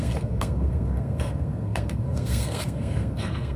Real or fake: fake